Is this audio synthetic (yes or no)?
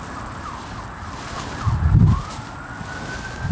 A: no